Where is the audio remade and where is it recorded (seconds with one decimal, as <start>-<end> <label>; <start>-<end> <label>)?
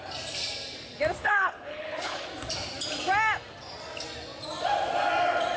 0.0-1.2 recorded; 1.2-2.3 remade; 2.3-5.6 recorded